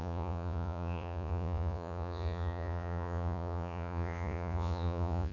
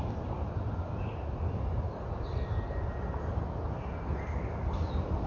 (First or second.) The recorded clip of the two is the second